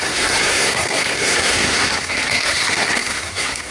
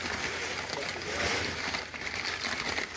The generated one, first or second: first